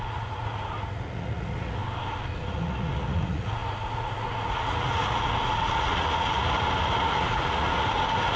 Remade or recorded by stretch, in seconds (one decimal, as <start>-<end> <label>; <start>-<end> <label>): 0.0-1.8 remade; 1.8-2.5 recorded; 2.5-8.4 remade